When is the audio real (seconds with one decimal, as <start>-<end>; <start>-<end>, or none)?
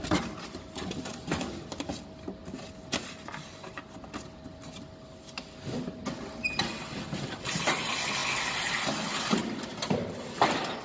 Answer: 0.0-10.8